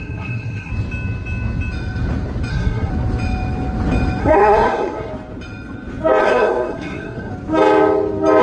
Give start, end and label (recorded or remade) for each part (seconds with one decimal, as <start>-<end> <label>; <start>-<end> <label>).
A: 0.0-0.7 remade; 0.7-2.5 recorded; 2.5-2.9 remade; 2.9-4.2 recorded; 4.2-5.1 remade; 5.1-6.2 recorded; 6.2-7.3 remade; 7.3-8.4 recorded